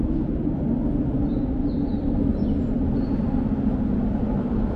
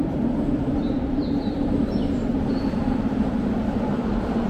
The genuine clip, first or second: first